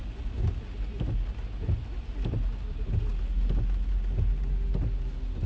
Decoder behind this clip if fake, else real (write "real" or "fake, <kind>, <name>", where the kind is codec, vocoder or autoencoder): real